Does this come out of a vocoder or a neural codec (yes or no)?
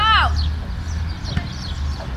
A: no